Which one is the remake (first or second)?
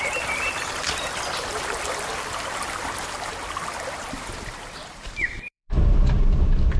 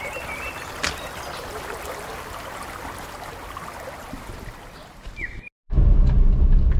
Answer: first